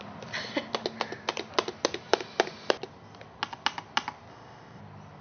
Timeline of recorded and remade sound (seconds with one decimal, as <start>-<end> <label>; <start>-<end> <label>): 0.0-4.3 recorded; 4.3-4.8 remade; 4.8-5.2 recorded